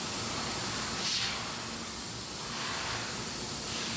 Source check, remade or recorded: recorded